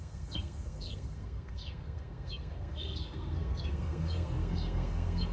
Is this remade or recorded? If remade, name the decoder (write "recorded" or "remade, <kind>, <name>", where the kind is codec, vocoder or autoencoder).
remade, codec, SNAC